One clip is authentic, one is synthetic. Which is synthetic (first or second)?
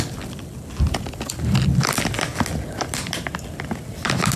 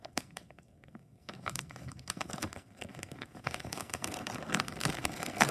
second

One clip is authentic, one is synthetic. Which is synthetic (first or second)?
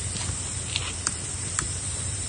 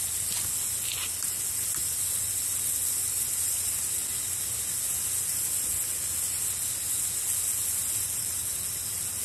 first